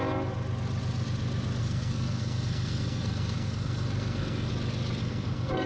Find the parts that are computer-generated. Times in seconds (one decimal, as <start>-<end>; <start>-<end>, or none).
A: 1.6-4.5; 5.0-5.7